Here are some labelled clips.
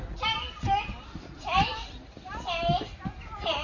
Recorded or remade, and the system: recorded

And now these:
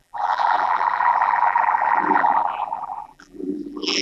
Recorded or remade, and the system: remade, vocoder, BigVGAN v2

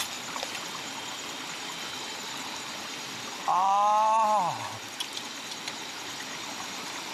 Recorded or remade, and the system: recorded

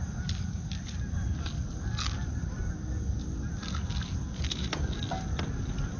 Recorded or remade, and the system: recorded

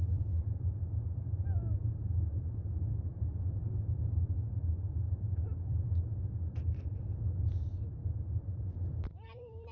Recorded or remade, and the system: remade, vocoder, BigVGAN v2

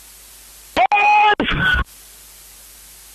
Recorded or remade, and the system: recorded